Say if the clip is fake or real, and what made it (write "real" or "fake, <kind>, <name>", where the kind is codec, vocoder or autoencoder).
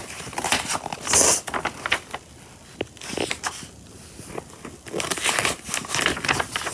real